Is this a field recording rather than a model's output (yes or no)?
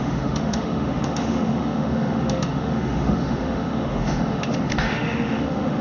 no